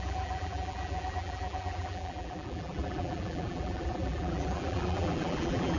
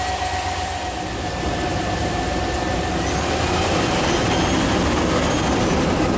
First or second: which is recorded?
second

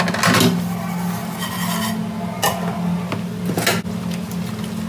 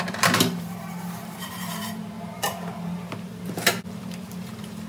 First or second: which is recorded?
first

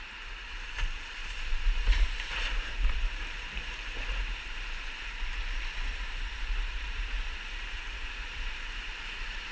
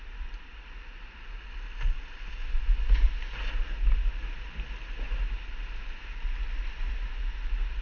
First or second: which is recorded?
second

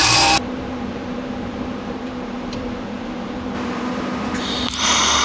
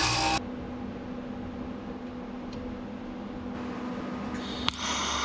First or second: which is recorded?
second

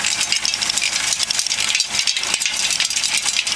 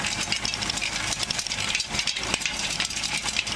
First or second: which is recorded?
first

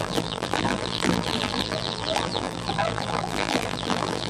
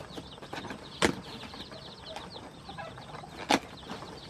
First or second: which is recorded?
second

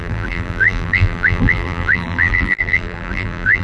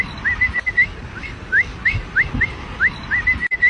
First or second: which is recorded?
second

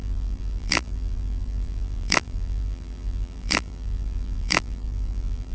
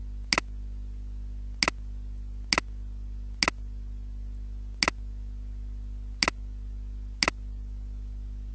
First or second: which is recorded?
second